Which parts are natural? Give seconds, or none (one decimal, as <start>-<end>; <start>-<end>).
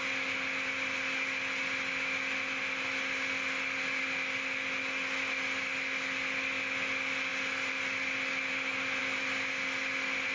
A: 0.0-10.3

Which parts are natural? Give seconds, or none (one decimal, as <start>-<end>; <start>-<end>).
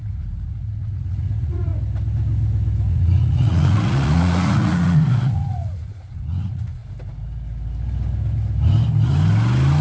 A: 1.7-2.9; 6.8-9.8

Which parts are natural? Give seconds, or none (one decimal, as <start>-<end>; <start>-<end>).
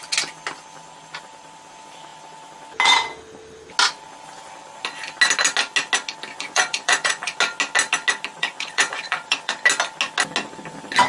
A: 0.0-6.3; 7.4-8.3; 9.5-11.1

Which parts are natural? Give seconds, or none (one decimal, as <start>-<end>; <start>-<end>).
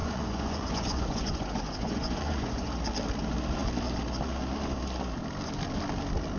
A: 2.7-6.4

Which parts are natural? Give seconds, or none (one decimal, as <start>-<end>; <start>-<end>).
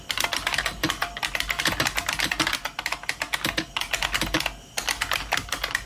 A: 0.0-5.9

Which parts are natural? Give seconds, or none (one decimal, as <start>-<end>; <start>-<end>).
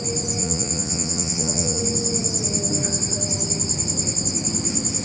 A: 0.0-0.4; 1.8-5.0